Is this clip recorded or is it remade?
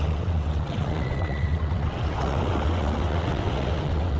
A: remade